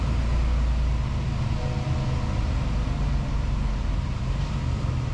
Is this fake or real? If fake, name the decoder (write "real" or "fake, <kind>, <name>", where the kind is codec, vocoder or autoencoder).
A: real